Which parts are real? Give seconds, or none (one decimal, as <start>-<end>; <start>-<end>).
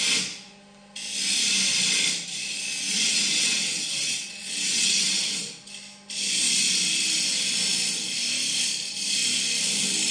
0.0-2.7; 5.4-10.1